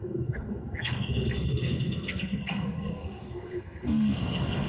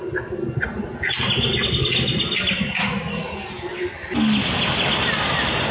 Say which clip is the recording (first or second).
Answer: second